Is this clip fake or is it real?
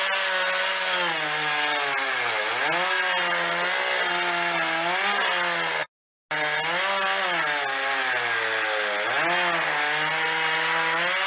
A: real